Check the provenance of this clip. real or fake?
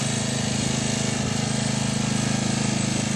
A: real